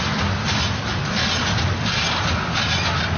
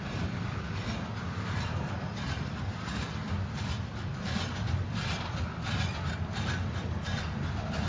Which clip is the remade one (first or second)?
second